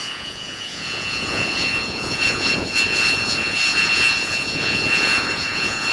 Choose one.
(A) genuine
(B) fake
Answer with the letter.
B